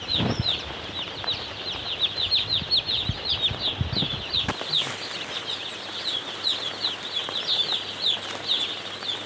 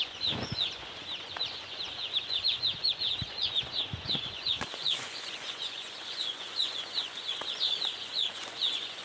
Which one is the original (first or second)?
first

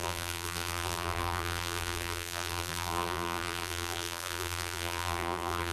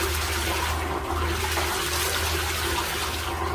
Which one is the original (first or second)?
second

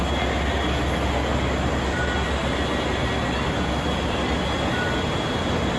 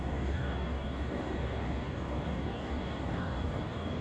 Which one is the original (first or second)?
first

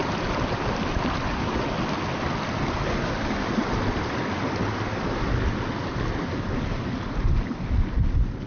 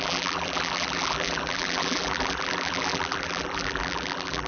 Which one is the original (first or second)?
first